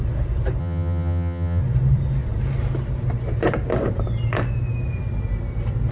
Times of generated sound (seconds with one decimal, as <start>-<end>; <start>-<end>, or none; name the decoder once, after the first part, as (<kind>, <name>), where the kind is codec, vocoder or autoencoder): 0.6-1.6 (vocoder, HiFi-GAN)